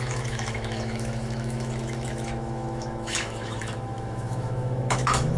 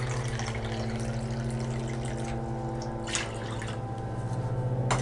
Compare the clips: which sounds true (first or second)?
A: second